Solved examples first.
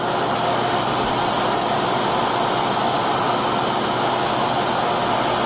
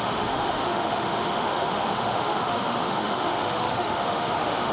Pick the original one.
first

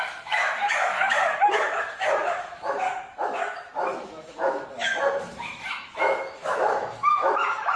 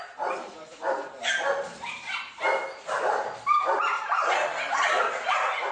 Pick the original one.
second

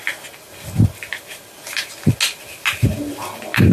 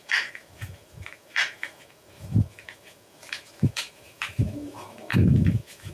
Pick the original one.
first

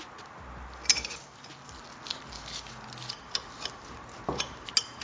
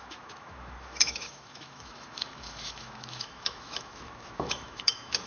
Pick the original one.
first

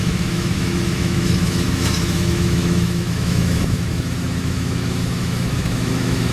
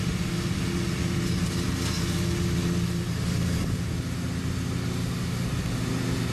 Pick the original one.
second